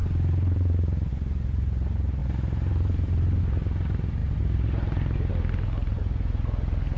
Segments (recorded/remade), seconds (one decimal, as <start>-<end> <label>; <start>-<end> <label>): 0.0-7.0 remade